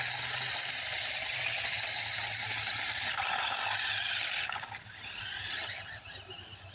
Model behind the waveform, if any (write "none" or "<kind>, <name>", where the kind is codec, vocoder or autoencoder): none